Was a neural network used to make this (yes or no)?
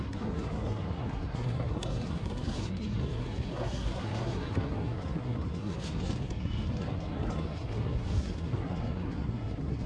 yes